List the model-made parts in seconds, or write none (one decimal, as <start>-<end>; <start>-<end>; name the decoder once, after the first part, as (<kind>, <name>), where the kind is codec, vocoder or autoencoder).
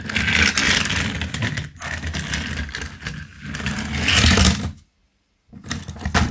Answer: 5.0-5.8 (vocoder, BigVGAN v2)